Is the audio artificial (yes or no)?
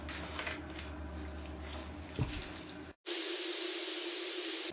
no